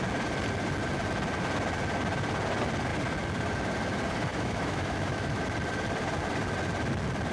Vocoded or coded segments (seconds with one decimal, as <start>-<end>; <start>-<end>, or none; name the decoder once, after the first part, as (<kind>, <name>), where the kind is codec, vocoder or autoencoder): 4.3-5.4 (autoencoder, DAC-VAE)